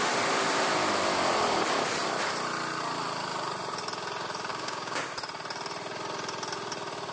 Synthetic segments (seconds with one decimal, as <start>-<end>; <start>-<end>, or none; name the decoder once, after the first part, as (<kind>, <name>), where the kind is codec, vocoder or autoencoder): 4.5-5.0 (codec, DAC)